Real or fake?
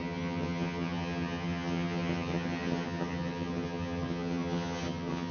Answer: fake